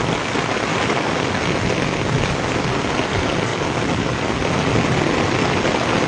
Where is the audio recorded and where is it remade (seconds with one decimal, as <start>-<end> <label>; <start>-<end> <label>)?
0.0-0.7 recorded; 0.7-1.3 remade; 1.3-3.5 recorded; 3.5-4.2 remade; 4.2-6.1 recorded